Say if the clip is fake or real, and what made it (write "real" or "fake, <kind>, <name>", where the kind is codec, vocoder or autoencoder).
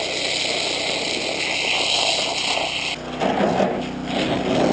real